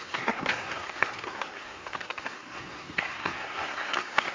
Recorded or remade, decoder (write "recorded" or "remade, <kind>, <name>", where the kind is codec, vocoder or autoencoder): remade, codec, SNAC